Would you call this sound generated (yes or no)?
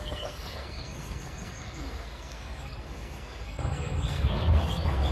yes